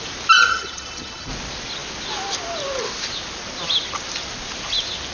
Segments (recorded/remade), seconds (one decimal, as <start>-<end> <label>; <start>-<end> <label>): 0.0-0.5 recorded; 0.5-1.3 remade; 1.3-5.1 recorded